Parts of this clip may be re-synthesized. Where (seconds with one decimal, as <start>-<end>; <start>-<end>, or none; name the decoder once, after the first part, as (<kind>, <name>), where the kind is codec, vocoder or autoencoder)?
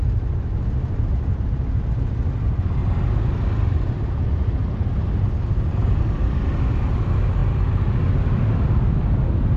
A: none